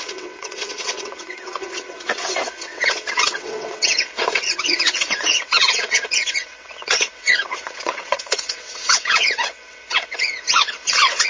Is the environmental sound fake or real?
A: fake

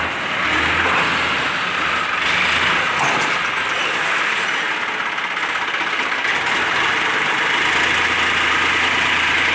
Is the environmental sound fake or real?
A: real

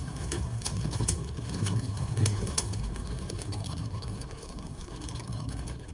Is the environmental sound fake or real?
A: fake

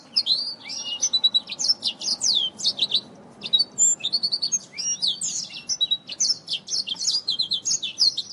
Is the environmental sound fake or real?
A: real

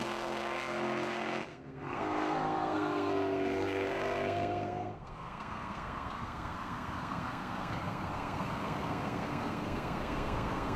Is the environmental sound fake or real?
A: fake